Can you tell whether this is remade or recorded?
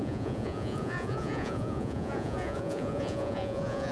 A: remade